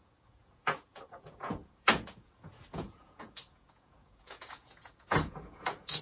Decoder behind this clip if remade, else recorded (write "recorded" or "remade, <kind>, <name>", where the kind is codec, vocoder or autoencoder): remade, vocoder, Vocos